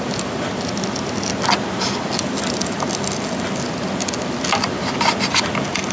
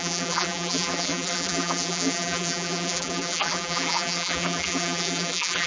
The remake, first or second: second